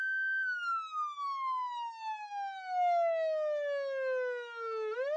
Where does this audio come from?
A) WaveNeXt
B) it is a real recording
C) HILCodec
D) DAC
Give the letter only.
B